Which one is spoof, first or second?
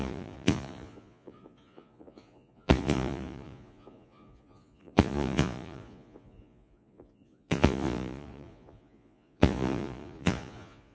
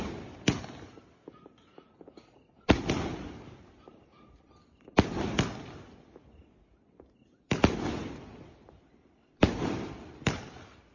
first